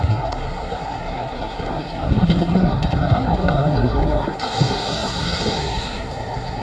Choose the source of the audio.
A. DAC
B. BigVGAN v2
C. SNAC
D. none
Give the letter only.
C